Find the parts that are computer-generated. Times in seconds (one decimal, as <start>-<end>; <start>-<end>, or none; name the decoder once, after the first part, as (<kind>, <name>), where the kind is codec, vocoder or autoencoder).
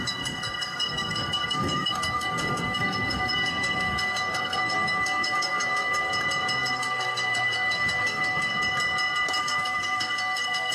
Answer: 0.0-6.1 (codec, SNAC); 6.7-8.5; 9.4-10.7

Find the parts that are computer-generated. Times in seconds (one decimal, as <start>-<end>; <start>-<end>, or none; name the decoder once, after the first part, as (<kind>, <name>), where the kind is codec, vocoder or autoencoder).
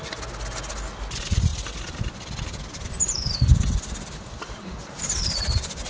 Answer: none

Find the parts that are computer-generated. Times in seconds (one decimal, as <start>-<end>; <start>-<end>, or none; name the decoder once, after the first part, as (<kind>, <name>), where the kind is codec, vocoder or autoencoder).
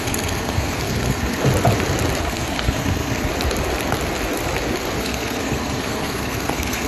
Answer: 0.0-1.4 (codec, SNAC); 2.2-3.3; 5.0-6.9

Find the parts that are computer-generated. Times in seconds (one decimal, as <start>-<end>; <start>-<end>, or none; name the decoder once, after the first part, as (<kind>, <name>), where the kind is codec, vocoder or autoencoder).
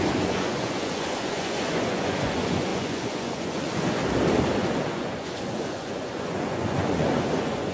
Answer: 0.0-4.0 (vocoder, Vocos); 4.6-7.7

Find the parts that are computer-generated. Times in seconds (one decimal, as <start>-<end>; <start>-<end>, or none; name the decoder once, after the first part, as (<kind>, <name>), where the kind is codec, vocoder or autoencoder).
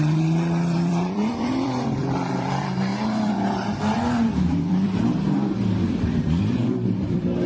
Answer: 0.0-7.5 (vocoder, BigVGAN v2)